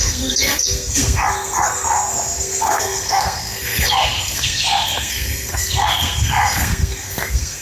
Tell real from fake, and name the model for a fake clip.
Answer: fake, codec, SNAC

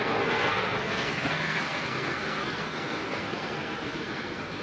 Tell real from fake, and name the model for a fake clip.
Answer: fake, codec, SNAC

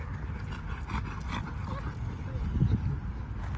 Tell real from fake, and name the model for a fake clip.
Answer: real